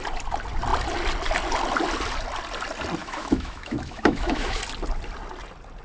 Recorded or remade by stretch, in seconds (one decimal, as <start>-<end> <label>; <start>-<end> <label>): 0.0-3.0 recorded; 3.0-4.6 remade; 4.6-5.8 recorded